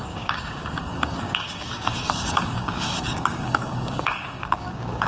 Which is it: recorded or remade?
remade